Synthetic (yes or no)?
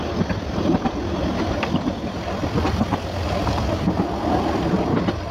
no